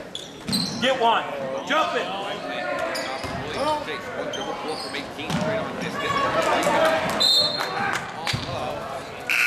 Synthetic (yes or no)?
no